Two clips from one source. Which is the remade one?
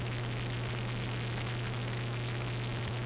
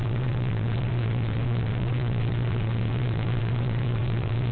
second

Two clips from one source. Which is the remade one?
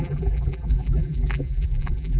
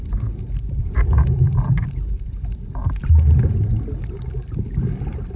first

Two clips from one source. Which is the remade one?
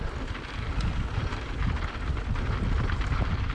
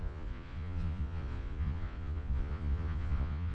second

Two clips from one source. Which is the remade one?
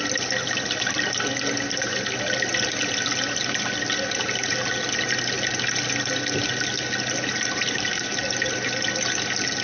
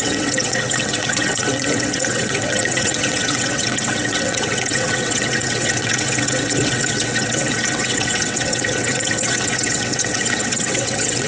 second